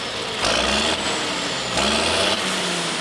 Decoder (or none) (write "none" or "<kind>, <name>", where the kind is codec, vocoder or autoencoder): none